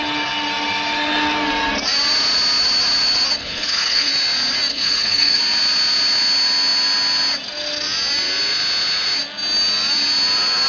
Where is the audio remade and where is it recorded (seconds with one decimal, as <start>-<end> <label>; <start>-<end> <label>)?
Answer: 0.0-3.4 recorded; 3.4-4.1 remade; 4.1-4.7 recorded; 4.7-5.4 remade; 5.4-10.7 recorded